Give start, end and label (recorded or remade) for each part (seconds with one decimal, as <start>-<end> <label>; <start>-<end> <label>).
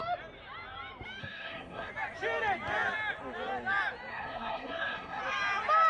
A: 0.0-1.2 recorded; 1.2-1.9 remade; 1.9-4.1 recorded; 4.1-5.2 remade; 5.2-5.9 recorded